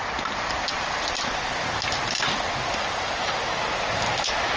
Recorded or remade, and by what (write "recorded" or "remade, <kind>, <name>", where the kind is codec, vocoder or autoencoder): recorded